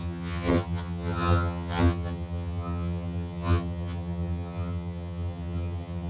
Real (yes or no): no